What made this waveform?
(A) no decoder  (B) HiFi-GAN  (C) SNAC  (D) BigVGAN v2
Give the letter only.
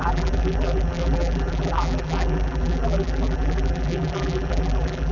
D